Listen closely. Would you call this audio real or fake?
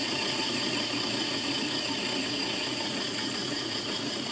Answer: fake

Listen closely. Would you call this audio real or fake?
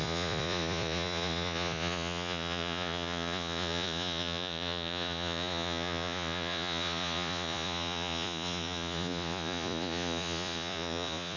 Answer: fake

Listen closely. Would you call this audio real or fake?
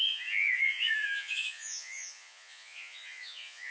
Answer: fake